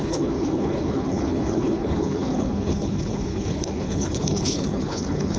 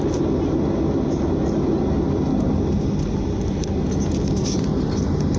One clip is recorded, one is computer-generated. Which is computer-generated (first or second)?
first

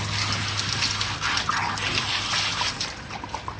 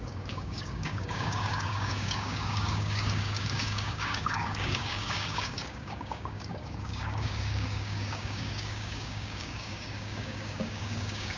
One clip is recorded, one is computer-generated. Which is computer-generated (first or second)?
second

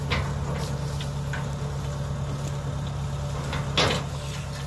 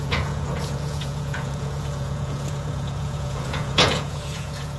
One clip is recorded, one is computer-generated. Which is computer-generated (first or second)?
second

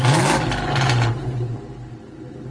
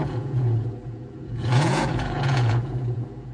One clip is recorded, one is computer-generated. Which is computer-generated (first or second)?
second